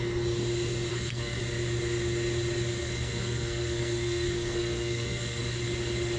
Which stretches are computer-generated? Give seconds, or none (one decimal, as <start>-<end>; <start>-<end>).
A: 0.9-1.4; 2.8-5.4